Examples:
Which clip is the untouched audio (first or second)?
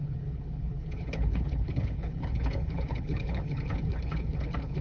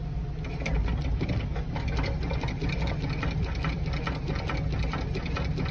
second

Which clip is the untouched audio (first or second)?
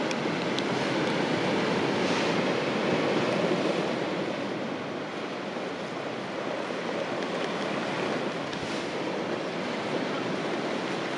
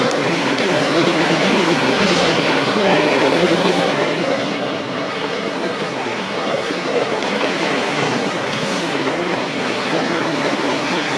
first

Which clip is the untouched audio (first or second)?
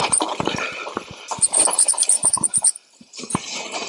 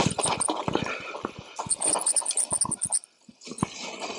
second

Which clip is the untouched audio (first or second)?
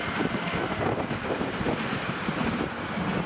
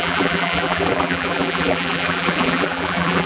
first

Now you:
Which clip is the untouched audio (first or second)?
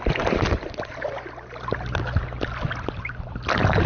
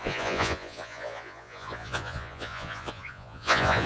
first